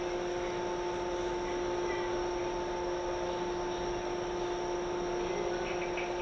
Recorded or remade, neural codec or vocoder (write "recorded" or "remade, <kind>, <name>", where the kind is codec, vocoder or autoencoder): recorded